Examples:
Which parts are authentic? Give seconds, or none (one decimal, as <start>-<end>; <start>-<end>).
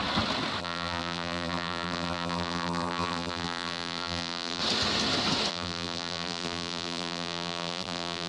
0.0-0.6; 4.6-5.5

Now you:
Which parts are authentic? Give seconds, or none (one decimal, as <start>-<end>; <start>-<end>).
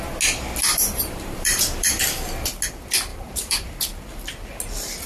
0.0-0.6; 1.9-3.1; 3.8-5.1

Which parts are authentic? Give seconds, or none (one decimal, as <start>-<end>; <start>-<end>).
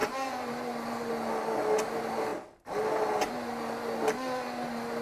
1.1-5.0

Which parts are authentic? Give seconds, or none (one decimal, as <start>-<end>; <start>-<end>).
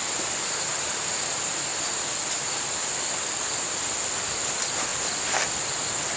1.7-2.3; 2.8-3.8; 4.9-6.2